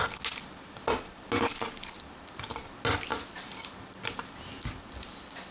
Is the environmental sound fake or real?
real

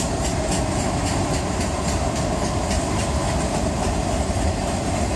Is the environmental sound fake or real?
real